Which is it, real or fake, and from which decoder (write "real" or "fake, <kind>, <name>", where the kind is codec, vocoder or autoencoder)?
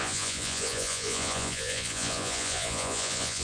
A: fake, vocoder, Vocos